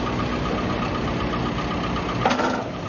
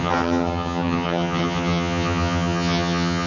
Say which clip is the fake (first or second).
second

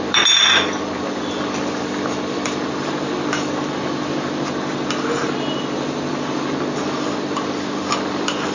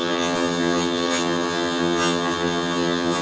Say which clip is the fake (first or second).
second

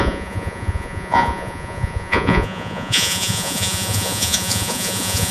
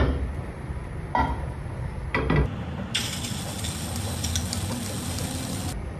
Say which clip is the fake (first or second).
first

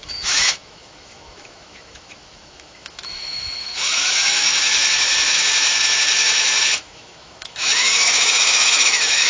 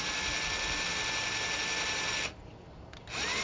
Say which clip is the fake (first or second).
first